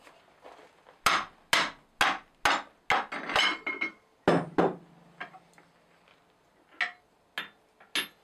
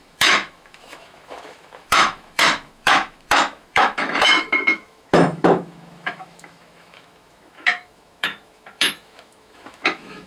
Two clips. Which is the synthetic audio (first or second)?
second